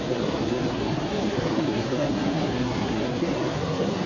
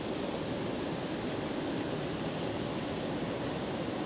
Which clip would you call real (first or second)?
second